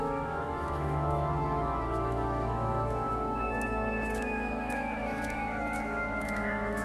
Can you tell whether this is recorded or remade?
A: remade